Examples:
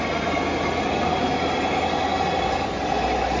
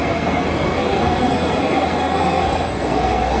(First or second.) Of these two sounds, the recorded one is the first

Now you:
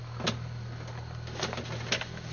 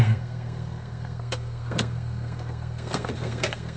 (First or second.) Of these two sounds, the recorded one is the first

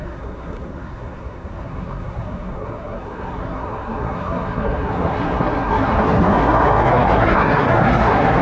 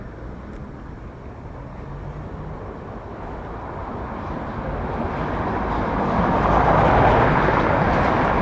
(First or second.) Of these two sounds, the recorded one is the second